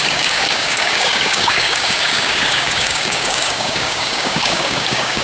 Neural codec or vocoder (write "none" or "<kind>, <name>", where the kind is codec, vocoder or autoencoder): codec, DAC